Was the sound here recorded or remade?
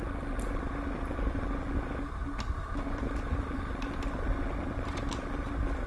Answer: recorded